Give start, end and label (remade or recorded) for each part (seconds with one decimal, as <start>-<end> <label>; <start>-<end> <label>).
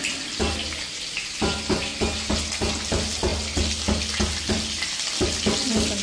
0.0-6.0 recorded